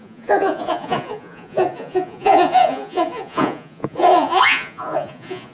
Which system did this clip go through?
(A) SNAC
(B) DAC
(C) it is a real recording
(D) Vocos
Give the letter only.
D